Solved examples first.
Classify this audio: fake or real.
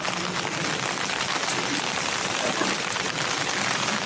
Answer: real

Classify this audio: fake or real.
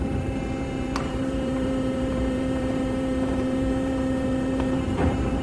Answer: fake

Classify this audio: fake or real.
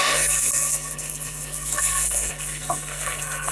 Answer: fake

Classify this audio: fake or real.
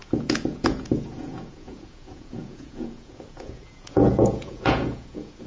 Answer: fake